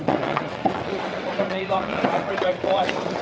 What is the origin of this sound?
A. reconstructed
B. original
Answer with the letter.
A